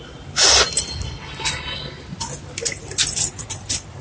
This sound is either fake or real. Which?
real